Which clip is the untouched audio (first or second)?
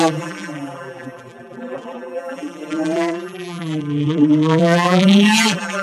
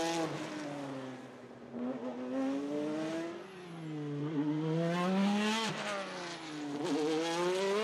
second